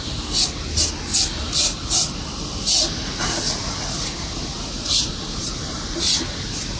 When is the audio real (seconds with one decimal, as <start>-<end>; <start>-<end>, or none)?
0.0-6.8